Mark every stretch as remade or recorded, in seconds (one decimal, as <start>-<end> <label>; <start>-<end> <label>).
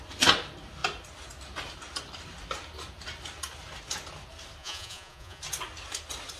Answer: 0.0-4.6 recorded; 4.6-5.4 remade; 5.4-6.4 recorded